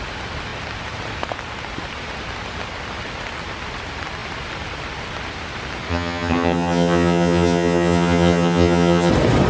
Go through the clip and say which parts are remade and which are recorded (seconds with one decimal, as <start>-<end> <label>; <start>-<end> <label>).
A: 0.0-5.9 recorded; 5.9-9.1 remade; 9.1-9.5 recorded